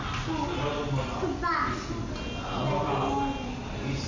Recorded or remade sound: recorded